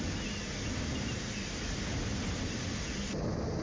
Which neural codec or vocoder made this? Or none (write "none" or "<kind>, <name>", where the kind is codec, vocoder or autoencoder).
none